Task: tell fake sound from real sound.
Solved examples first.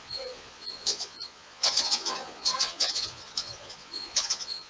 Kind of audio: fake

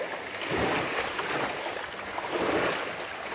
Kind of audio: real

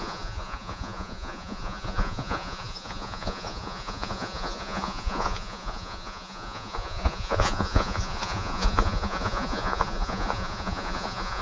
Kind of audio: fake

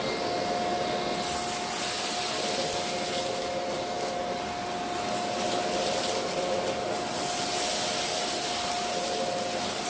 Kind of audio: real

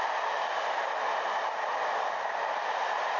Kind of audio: real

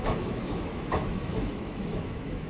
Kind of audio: fake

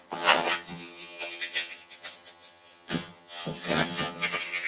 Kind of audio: fake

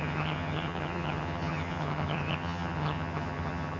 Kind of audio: fake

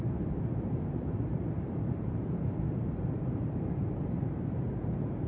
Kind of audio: fake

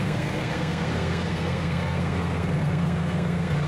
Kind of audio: fake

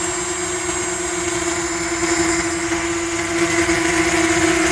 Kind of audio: real